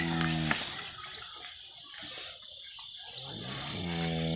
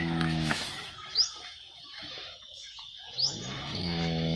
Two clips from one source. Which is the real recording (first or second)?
first